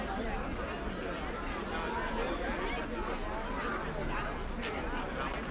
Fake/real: real